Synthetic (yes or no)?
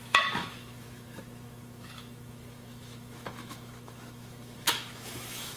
yes